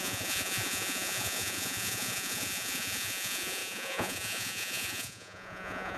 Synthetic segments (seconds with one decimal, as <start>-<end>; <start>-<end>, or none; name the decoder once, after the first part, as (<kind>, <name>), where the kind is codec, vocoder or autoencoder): 0.0-6.0 (vocoder, Vocos)